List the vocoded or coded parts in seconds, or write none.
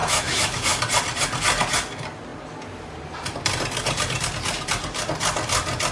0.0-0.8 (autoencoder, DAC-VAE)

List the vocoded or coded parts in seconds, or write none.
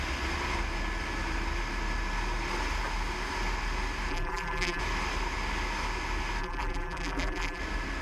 4.1-4.8 (vocoder, BigVGAN v2); 6.4-7.6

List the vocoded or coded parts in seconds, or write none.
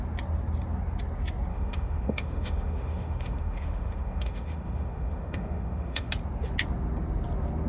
1.5-6.1 (autoencoder, DAC-VAE)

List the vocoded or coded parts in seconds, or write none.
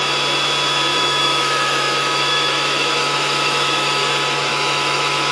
0.9-4.1 (autoencoder, DAC-VAE); 4.5-5.3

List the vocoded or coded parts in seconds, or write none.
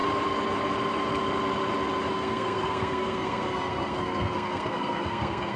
2.1-5.6 (codec, SNAC)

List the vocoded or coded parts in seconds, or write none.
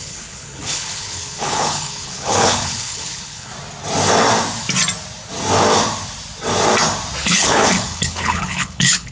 0.0-3.5 (codec, HILCodec); 7.2-9.1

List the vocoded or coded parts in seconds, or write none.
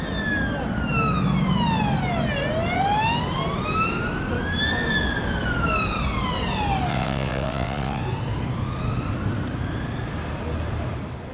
6.9-8.0 (vocoder, WaveNeXt)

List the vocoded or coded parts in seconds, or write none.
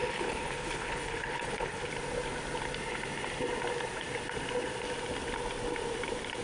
0.0-1.9 (codec, HILCodec)